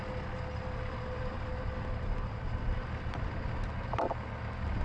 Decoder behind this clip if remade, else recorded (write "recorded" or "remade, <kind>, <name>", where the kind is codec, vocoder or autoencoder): recorded